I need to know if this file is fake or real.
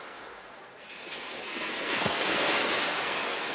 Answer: fake